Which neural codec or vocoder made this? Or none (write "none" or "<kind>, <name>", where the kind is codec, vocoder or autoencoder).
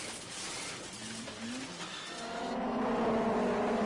none